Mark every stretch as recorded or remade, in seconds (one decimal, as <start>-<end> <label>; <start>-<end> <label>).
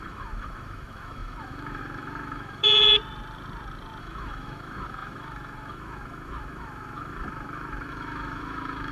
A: 0.0-2.6 remade; 2.6-4.0 recorded; 4.0-8.9 remade